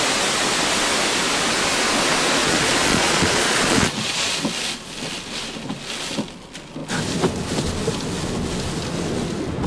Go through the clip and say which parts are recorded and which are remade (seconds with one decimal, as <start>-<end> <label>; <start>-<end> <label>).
0.0-2.4 recorded; 2.4-4.4 remade; 4.4-9.7 recorded